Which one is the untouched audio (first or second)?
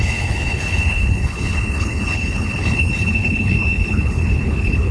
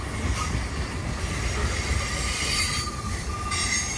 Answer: second